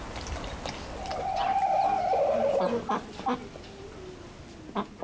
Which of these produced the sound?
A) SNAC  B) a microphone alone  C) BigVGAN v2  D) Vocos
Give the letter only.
B